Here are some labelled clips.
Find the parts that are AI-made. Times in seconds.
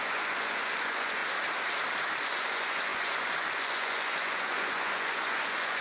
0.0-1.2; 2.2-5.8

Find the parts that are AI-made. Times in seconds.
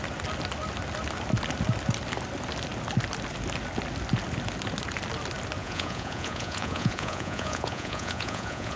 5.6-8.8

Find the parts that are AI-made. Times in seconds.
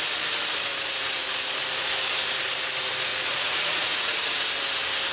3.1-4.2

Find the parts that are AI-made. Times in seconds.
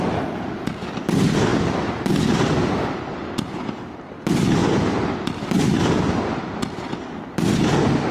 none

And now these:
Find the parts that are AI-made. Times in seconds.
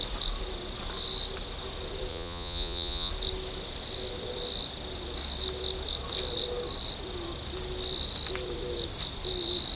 2.1-3.1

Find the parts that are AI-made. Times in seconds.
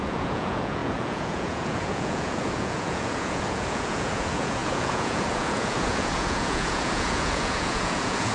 0.0-8.3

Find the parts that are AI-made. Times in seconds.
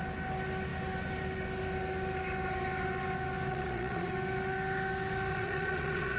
3.5-4.1; 5.3-6.2